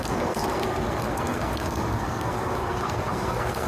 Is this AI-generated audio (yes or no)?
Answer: yes